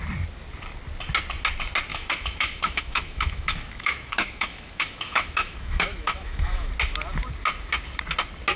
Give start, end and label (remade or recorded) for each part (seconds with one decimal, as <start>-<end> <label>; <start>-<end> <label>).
0.0-1.9 recorded; 1.9-6.7 remade; 6.7-8.6 recorded